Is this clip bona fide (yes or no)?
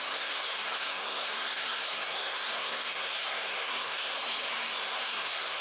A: no